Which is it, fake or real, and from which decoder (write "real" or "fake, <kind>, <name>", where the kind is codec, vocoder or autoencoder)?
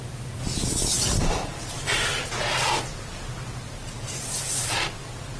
real